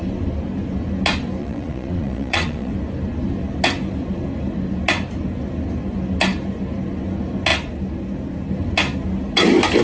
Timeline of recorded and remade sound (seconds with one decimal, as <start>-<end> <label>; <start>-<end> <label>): 0.0-1.4 recorded; 1.4-2.7 remade; 2.7-9.8 recorded